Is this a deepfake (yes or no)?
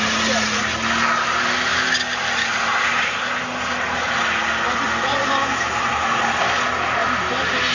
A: no